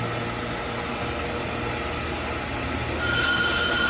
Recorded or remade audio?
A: recorded